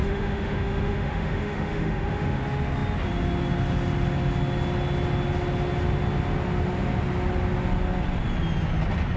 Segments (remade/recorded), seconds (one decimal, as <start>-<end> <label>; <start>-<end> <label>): 0.0-2.4 remade; 2.4-9.2 recorded